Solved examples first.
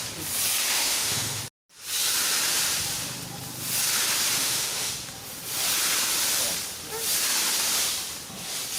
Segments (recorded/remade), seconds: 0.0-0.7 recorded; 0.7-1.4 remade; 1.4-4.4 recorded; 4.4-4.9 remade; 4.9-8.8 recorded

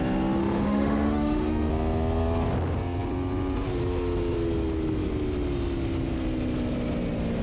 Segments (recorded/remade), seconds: 0.0-0.4 recorded; 0.4-1.7 remade; 1.7-7.4 recorded

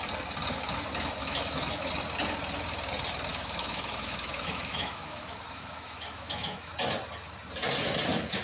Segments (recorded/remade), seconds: 0.0-1.2 recorded; 1.2-1.9 remade; 1.9-3.3 recorded; 3.3-6.7 remade; 6.7-8.4 recorded